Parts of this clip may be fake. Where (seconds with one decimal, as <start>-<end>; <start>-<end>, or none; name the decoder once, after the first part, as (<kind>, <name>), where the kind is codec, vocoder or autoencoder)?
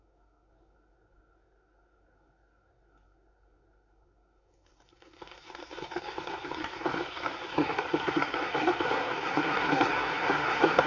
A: 0.0-10.9 (codec, SNAC)